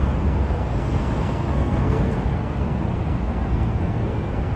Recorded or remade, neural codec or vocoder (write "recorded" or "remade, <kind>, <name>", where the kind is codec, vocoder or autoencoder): remade, codec, SNAC